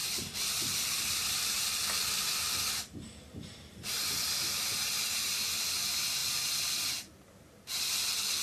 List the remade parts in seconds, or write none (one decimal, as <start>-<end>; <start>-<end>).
none